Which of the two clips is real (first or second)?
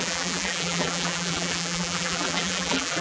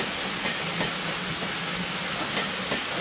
second